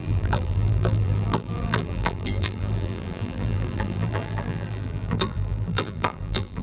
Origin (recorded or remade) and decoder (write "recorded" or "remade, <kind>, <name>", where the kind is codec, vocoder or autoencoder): remade, vocoder, BigVGAN v2